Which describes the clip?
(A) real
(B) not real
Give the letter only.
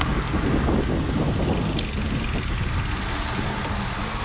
A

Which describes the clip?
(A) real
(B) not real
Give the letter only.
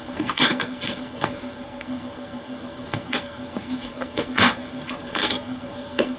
B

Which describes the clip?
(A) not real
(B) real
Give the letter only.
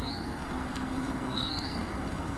A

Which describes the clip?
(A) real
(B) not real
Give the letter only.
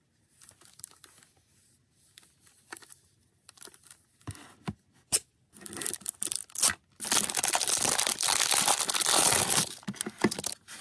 A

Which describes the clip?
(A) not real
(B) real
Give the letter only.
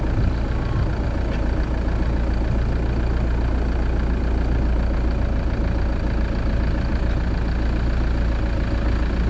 B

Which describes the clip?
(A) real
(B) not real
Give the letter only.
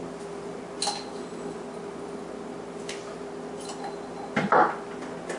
A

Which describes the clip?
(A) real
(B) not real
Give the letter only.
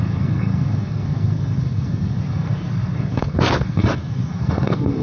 B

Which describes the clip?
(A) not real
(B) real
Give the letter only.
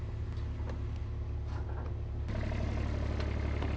B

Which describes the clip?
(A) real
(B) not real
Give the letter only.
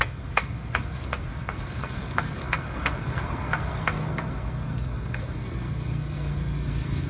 B